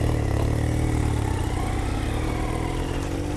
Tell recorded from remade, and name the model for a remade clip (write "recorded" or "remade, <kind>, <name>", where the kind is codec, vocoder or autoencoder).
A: recorded